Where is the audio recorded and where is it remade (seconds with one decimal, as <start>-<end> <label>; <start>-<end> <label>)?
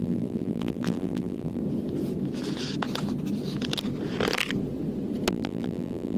0.0-1.6 remade; 1.6-5.3 recorded; 5.3-6.2 remade